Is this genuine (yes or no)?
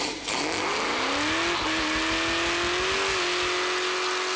yes